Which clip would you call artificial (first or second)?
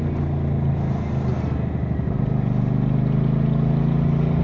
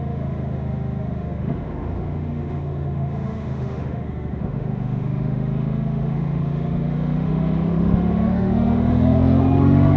second